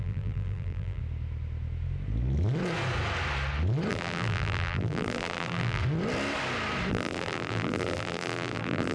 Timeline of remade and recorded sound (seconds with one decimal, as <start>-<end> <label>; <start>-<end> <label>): 0.0-1.0 remade; 1.0-3.9 recorded; 3.9-5.8 remade; 5.8-6.9 recorded; 6.9-8.9 remade